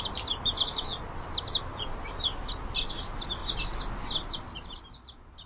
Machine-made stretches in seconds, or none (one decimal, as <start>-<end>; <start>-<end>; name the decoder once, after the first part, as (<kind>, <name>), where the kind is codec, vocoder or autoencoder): 0.0-0.9 (vocoder, BigVGAN v2); 1.4-2.3; 3.0-3.4; 4.2-5.5